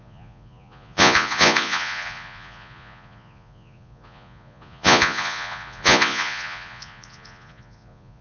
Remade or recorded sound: remade